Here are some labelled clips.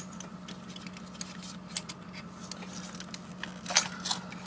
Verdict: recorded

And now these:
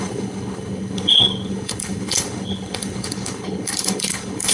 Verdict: remade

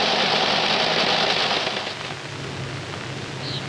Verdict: recorded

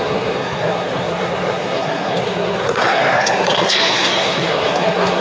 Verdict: remade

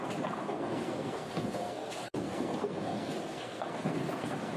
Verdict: remade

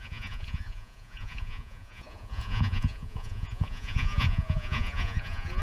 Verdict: remade